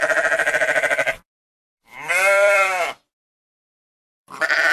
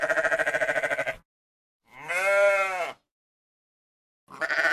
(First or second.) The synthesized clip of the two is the first